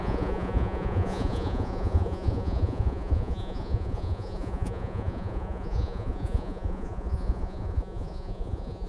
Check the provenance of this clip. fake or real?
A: fake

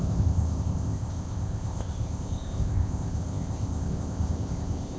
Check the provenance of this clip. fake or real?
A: fake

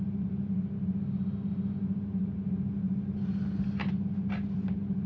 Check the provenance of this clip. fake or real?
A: real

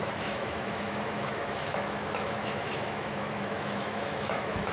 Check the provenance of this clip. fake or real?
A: fake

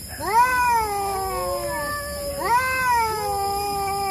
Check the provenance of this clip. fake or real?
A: real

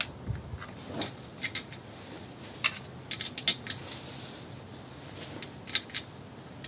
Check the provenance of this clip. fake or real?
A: real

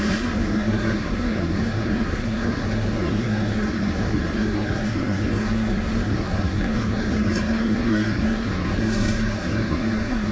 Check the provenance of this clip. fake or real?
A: fake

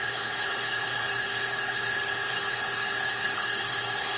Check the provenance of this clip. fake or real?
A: fake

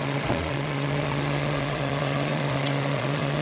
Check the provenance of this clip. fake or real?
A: fake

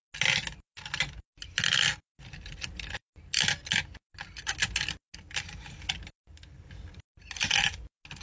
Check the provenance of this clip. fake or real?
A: real